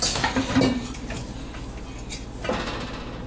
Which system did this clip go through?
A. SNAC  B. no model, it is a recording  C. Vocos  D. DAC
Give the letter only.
B